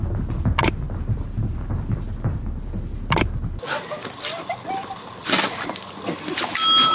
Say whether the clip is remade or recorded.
recorded